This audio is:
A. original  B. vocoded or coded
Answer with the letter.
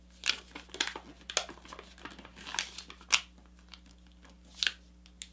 A